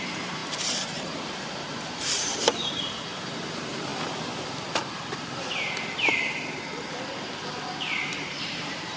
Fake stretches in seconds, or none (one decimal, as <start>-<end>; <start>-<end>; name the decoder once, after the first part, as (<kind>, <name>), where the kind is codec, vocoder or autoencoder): 0.0-3.9 (vocoder, BigVGAN v2); 7.8-9.0